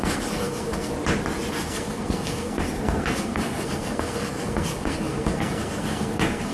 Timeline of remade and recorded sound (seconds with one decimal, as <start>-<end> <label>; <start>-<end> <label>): 0.0-0.9 remade; 0.9-1.5 recorded; 1.5-6.5 remade